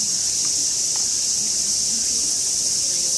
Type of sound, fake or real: real